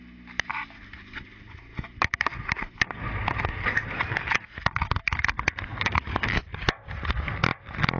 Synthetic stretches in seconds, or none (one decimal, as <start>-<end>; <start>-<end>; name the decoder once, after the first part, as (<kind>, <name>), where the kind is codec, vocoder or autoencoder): 5.7-7.0 (codec, DAC)

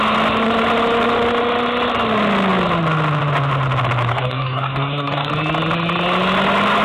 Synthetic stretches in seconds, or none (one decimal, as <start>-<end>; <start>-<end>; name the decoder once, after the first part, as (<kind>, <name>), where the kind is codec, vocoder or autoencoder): 4.1-5.3 (codec, DAC)

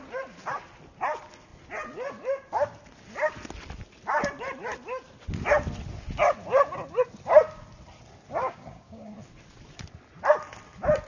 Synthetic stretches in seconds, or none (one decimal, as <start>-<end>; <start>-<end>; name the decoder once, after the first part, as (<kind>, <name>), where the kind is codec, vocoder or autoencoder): 8.4-9.1 (codec, DAC)

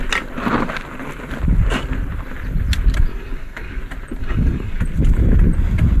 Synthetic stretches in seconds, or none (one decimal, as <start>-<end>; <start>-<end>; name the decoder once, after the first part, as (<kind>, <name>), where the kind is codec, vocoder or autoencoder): 3.1-3.8 (codec, DAC); 4.2-4.8

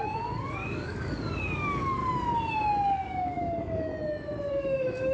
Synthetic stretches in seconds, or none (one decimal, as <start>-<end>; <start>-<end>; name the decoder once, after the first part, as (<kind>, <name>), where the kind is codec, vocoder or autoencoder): 0.0-2.0 (codec, DAC); 2.5-3.9; 4.5-5.1

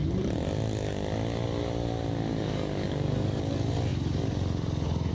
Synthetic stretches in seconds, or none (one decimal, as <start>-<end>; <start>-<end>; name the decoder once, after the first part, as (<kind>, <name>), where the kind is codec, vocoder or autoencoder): 2.3-3.4 (codec, DAC)

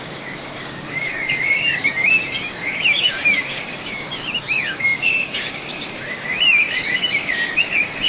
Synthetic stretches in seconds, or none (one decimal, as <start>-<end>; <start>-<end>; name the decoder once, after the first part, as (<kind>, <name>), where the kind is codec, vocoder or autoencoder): 0.0-8.1 (codec, DAC)